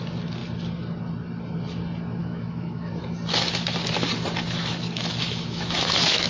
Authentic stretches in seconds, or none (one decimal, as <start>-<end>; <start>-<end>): 0.0-2.2; 2.9-5.2